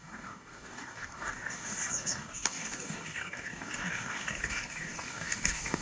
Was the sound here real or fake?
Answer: fake